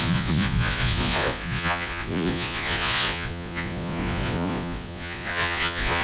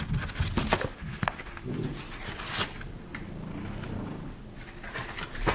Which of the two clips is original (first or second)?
second